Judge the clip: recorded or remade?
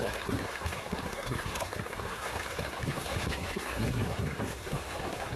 remade